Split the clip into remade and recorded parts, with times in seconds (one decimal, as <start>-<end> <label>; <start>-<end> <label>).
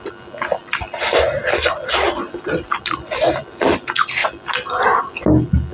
0.0-5.7 recorded